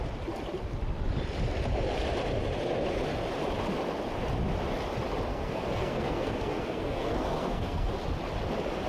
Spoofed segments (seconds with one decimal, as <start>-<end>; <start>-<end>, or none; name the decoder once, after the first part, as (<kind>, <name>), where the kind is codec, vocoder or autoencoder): 5.3-7.9 (codec, SNAC)